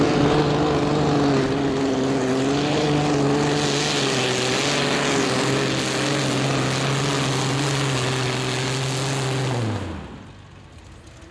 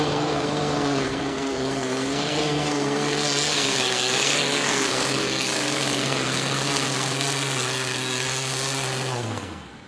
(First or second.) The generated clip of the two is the second